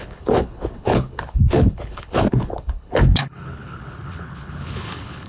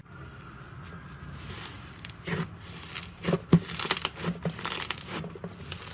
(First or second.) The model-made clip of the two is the first